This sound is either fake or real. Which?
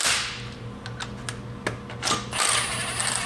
real